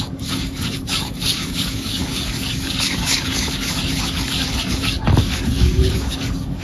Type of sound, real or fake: fake